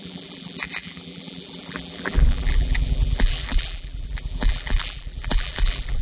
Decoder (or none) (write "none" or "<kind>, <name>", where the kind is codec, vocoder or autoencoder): vocoder, BigVGAN v2